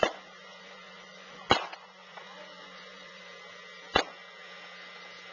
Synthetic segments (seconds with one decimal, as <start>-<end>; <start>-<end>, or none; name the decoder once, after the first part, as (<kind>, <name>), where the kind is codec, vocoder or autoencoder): 0.0-3.2 (vocoder, Vocos)